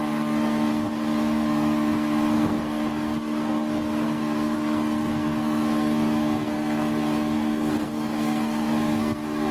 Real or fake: fake